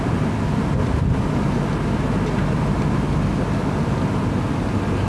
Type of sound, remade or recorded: recorded